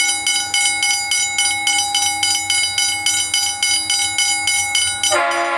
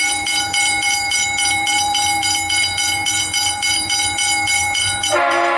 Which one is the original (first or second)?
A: first